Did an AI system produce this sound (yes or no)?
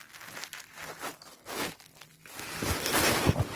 no